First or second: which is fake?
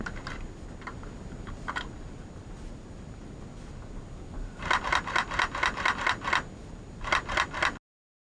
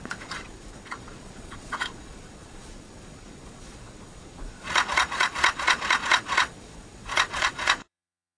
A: second